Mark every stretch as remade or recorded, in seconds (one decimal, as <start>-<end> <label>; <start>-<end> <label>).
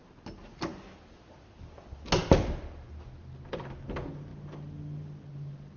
0.0-5.8 recorded